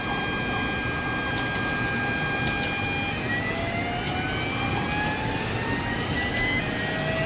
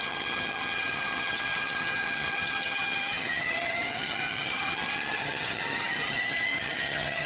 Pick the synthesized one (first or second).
second